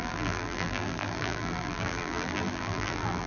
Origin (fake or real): fake